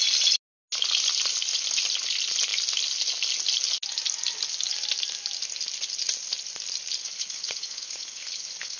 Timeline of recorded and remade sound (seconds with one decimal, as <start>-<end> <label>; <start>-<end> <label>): 0.0-7.0 recorded; 7.0-8.8 remade